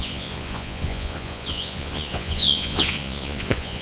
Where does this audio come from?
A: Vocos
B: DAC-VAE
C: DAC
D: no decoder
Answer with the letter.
A